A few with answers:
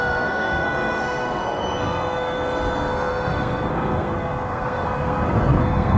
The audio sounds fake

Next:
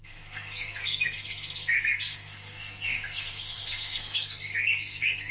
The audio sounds fake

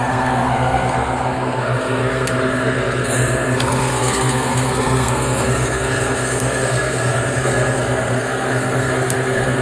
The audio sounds fake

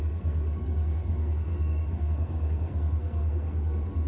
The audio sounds fake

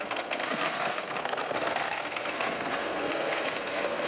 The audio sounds fake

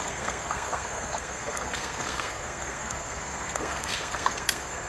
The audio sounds fake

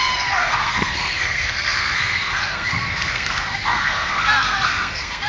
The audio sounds fake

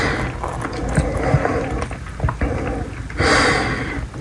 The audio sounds real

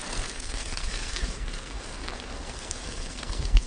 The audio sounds fake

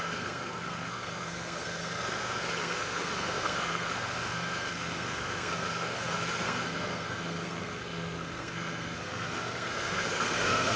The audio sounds fake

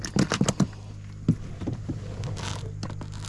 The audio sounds real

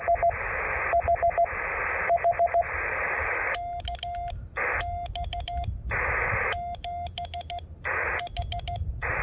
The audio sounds real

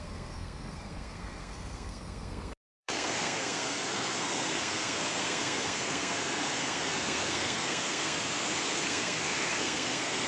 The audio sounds fake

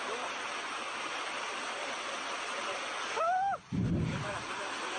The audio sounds real